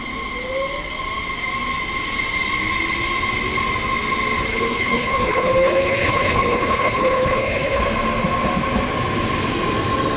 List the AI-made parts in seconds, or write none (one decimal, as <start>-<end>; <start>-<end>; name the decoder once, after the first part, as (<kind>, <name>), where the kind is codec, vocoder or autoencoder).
4.5-7.8 (codec, HILCodec)